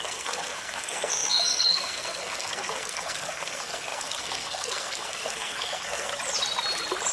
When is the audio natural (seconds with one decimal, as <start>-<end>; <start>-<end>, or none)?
6.1-7.1